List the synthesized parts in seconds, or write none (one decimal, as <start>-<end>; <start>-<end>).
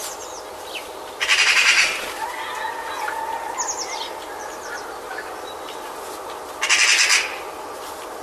none